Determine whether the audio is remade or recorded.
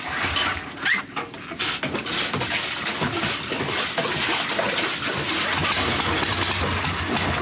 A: recorded